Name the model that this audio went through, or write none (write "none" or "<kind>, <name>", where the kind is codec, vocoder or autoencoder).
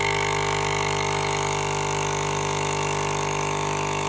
autoencoder, DAC-VAE